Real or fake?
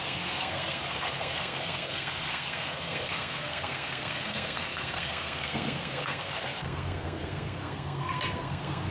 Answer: fake